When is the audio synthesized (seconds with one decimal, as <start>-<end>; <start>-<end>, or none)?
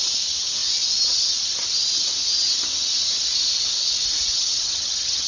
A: 4.3-5.3